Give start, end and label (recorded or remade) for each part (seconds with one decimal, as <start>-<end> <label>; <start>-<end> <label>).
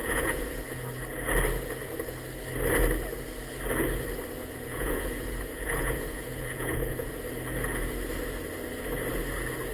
0.0-0.6 remade; 0.6-4.4 recorded; 4.4-7.1 remade; 7.1-9.7 recorded